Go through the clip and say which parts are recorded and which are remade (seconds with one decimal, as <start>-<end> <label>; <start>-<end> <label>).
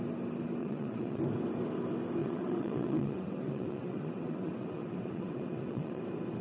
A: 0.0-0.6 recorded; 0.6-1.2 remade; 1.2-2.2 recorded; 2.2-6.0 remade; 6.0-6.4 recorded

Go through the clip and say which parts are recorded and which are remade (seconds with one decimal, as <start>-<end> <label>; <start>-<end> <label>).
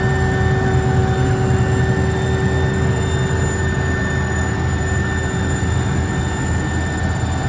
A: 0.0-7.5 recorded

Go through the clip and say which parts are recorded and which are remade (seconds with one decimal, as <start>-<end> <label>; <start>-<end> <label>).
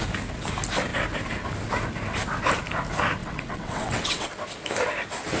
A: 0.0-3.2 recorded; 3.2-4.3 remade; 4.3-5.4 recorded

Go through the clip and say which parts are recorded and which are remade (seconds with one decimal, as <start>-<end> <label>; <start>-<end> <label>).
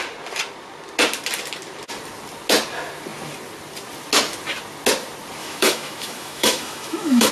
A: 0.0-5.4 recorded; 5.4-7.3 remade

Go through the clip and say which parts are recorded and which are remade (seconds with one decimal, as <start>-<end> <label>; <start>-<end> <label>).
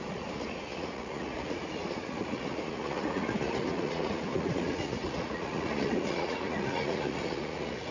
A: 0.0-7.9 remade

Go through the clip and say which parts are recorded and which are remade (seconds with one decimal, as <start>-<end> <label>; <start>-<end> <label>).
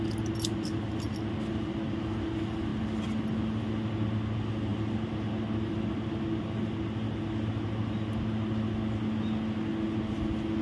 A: 0.0-10.6 recorded